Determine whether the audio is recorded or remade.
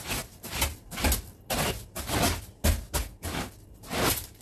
recorded